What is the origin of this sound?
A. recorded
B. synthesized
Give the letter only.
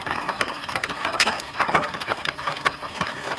B